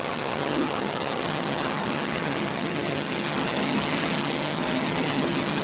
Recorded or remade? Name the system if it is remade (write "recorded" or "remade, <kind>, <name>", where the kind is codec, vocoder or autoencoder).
remade, vocoder, HiFi-GAN